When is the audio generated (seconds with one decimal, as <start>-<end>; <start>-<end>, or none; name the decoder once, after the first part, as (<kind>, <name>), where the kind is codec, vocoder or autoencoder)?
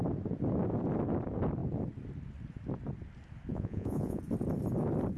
3.5-4.2 (vocoder, Vocos)